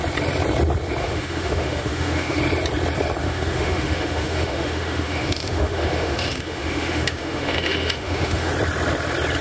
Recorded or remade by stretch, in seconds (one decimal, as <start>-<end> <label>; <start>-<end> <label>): 0.0-1.0 recorded; 1.0-2.4 remade; 2.4-3.2 recorded; 3.2-8.5 remade; 8.5-9.4 recorded